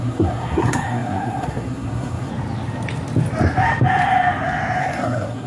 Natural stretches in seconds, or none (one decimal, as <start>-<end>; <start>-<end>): 2.3-4.8